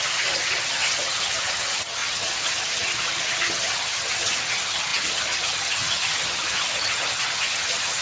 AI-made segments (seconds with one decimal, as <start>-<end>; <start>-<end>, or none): 0.0-8.0